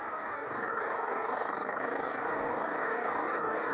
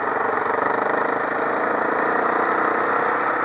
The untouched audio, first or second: second